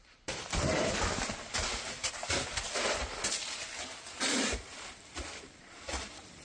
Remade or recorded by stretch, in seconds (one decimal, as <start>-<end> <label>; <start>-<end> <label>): 0.0-1.6 remade; 1.6-4.2 recorded; 4.2-6.4 remade